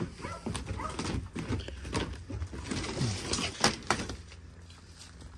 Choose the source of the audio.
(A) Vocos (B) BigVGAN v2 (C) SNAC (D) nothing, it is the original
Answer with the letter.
D